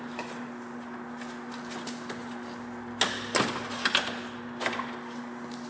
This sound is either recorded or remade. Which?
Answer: recorded